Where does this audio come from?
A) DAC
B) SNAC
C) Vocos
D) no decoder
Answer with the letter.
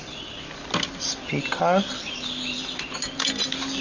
D